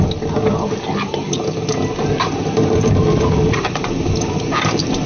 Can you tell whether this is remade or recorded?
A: recorded